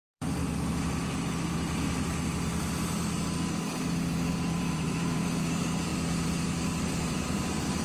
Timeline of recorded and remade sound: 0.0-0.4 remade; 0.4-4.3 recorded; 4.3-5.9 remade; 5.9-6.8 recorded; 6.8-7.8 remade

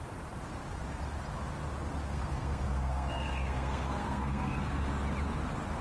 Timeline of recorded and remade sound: 0.0-2.1 recorded; 2.1-4.8 remade; 4.8-5.8 recorded

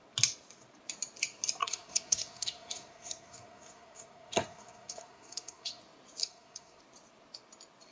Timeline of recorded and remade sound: 0.0-1.6 recorded; 1.6-5.8 remade; 5.8-6.2 recorded; 6.2-6.8 remade; 6.8-7.9 recorded